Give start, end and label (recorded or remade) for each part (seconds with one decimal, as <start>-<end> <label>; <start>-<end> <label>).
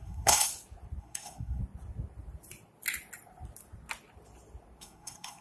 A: 0.0-0.5 remade; 0.5-1.0 recorded; 1.0-1.6 remade; 1.6-4.8 recorded; 4.8-5.4 remade